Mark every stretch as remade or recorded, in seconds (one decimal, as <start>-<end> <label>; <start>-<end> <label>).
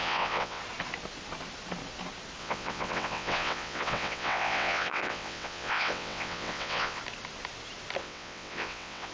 0.0-0.6 remade; 0.6-2.4 recorded; 2.4-7.0 remade; 7.0-8.0 recorded; 8.0-9.1 remade